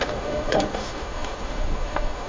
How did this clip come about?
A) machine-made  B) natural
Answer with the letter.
A